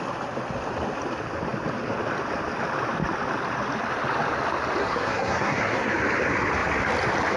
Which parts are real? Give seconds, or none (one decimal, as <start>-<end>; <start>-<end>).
0.0-4.8; 5.9-7.4

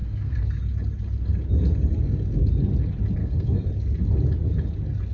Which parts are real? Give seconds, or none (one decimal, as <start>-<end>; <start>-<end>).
0.6-3.2; 3.7-5.1

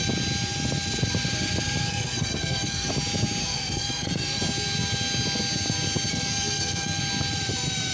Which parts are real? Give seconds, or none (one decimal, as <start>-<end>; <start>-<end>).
0.0-1.8; 2.9-3.4; 4.4-6.1; 7.0-7.9

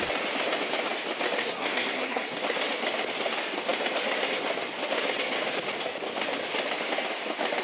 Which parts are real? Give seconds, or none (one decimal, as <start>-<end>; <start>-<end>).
0.0-1.4; 2.4-7.6

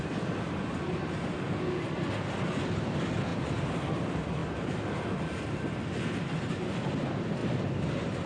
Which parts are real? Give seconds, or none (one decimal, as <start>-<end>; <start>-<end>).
0.0-8.3

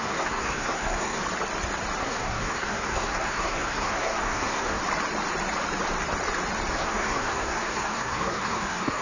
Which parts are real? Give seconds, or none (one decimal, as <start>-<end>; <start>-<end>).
1.2-2.0; 4.8-6.7

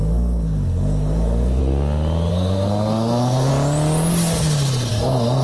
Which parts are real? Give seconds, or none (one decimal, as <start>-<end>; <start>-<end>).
1.6-2.3; 3.5-4.9